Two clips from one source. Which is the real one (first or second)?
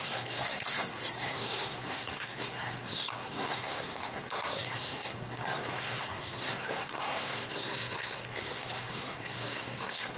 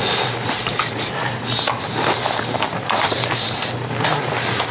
second